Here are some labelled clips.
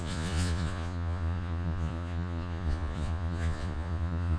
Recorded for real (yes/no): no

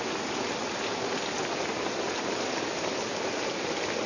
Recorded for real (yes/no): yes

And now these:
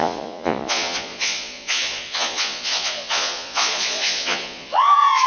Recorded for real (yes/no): no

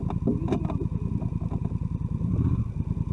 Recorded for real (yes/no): yes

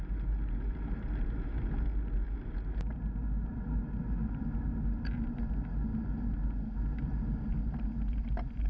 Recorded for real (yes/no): yes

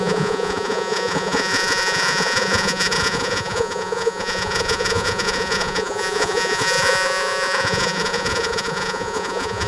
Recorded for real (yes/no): no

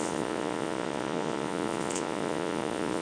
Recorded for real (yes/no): no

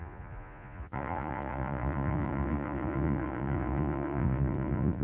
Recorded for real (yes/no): no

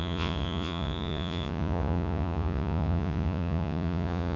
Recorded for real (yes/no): no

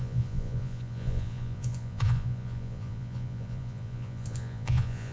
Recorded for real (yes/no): no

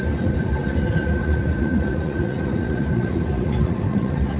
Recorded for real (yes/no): no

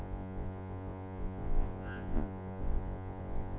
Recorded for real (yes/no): no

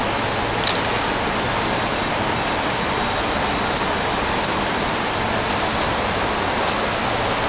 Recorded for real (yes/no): yes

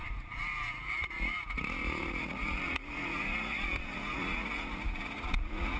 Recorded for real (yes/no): no